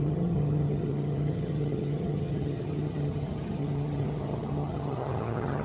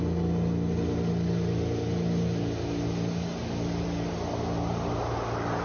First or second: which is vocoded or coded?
first